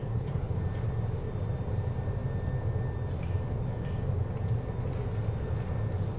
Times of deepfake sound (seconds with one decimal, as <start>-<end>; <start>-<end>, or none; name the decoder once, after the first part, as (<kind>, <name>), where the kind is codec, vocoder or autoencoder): 0.0-0.6 (codec, HILCodec)